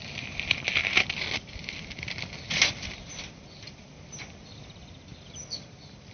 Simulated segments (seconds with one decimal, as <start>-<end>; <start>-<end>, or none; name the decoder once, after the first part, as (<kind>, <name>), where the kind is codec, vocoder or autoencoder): none